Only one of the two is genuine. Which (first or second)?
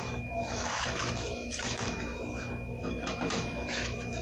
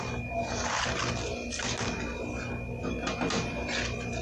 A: second